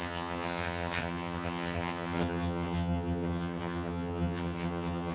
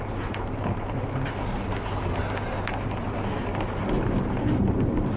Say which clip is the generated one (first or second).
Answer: first